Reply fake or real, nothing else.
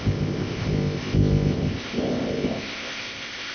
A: fake